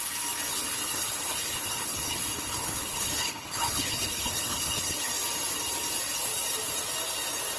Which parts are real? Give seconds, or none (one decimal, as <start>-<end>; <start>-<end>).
0.0-0.5; 5.1-7.6